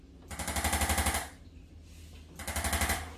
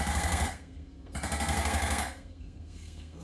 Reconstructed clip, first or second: second